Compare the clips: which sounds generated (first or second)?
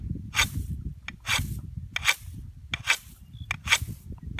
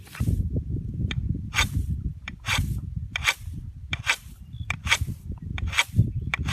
second